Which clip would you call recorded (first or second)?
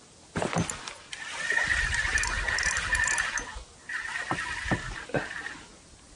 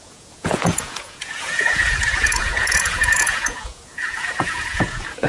first